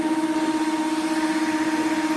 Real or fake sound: fake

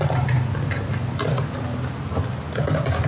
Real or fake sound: real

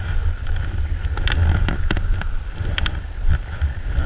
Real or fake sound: real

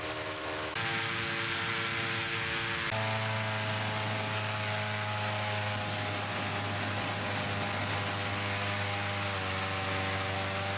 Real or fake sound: real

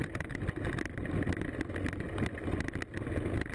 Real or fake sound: real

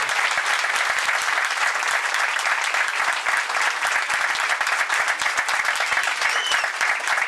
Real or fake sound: real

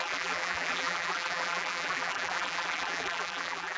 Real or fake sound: fake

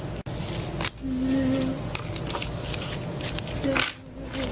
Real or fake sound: real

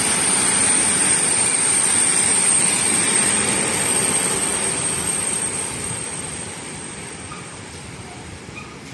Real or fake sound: fake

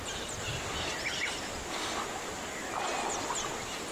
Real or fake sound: real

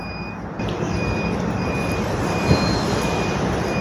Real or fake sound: fake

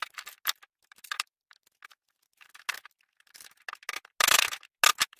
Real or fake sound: real